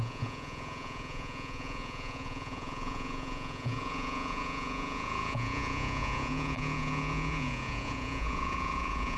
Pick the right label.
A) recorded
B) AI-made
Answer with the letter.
B